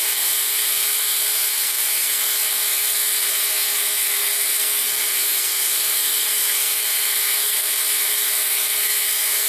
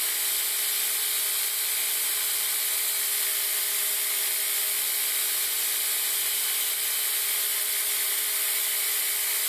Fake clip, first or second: first